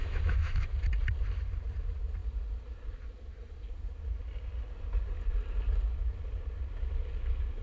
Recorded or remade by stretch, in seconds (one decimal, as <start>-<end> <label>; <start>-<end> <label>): 0.0-0.7 remade; 0.7-7.6 recorded